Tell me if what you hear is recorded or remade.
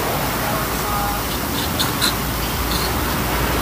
recorded